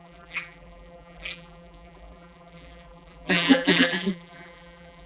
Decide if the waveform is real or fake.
fake